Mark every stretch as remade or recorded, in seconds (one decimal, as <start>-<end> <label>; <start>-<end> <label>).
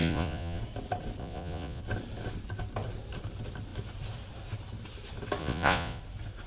0.0-0.6 remade; 0.6-1.2 recorded; 1.2-1.8 remade; 1.8-5.4 recorded; 5.4-6.0 remade; 6.0-6.5 recorded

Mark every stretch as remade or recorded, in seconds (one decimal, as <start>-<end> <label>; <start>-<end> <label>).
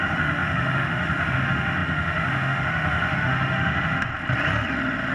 0.0-4.1 remade; 4.1-5.1 recorded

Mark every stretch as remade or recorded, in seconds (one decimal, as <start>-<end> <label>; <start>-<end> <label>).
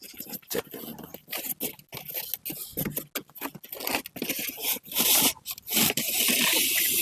0.0-4.7 recorded; 4.7-6.2 remade; 6.2-7.0 recorded